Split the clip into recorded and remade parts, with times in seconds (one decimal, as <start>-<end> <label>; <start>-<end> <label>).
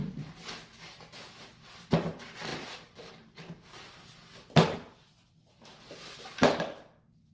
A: 0.0-7.3 recorded